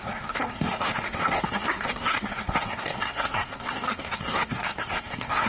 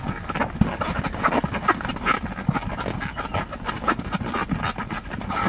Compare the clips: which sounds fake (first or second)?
first